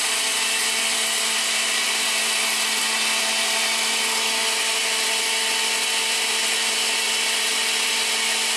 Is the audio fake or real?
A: real